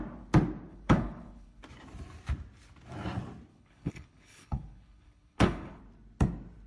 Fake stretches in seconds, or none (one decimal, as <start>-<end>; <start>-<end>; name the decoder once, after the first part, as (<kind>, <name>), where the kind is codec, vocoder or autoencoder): 0.7-1.6 (codec, HILCodec); 3.5-5.8